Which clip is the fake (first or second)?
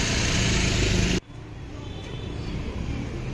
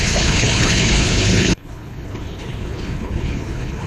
second